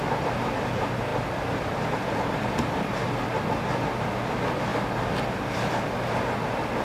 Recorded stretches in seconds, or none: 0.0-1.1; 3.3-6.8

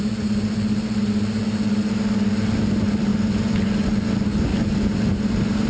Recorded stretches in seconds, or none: 0.0-3.1; 3.9-4.5

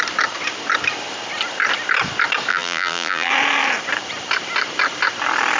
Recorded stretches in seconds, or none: 0.0-2.5; 3.3-5.6

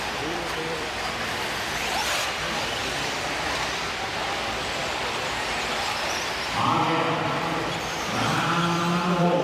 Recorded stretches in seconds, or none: 2.8-3.5; 4.8-6.1

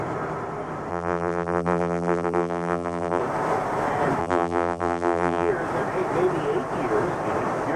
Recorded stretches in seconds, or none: 0.0-0.9; 3.2-4.2; 5.5-7.8

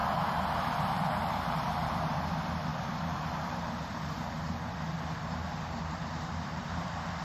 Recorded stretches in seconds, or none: 2.1-2.7

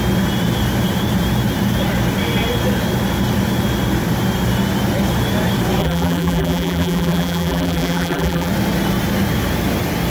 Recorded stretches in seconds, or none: 0.0-5.8; 8.5-10.1

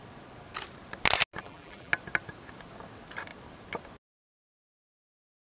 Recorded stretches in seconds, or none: 0.0-1.4; 1.9-5.5